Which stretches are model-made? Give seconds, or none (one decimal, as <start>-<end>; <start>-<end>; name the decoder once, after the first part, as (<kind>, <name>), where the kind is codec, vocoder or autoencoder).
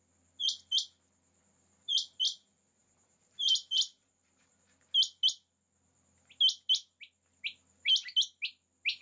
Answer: 2.8-4.5 (vocoder, BigVGAN v2)